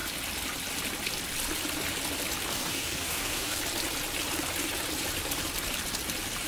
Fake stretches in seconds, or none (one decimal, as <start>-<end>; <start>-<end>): 2.5-3.6